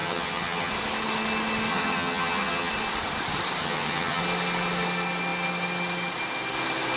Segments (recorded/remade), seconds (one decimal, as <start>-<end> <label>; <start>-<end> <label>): 0.0-0.7 remade; 0.7-1.7 recorded; 1.7-2.7 remade; 2.7-3.6 recorded; 3.6-4.2 remade; 4.2-7.0 recorded